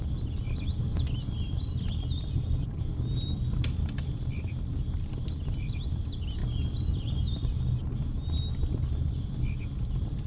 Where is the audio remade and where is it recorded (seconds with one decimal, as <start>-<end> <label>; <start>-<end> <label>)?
0.0-10.3 recorded